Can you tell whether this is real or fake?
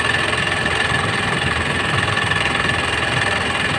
fake